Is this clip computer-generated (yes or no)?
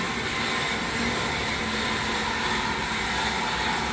no